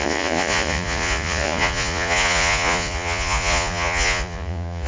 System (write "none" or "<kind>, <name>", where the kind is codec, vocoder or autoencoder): vocoder, Vocos